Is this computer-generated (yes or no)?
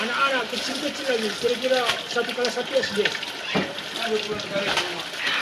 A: no